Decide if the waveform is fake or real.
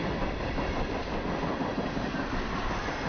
real